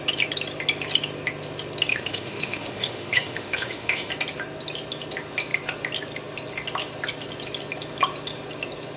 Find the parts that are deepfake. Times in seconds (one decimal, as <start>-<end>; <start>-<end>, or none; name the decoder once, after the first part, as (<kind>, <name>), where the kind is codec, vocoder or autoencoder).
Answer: 1.9-4.1 (autoencoder, DAC-VAE)